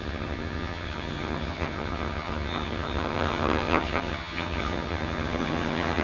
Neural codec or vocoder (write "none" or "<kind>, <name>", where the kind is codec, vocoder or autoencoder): vocoder, HiFi-GAN